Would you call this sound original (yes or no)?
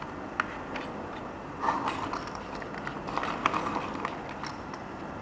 yes